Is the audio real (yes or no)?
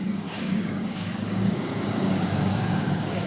no